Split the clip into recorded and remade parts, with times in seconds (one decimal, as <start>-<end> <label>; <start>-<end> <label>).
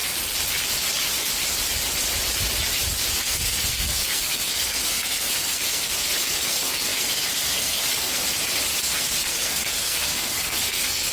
0.0-3.1 recorded; 3.1-8.2 remade; 8.2-8.8 recorded; 8.8-11.1 remade